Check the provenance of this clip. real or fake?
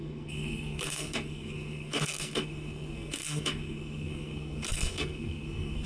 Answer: fake